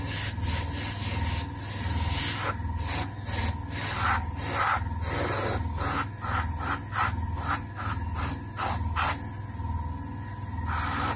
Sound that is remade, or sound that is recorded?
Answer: recorded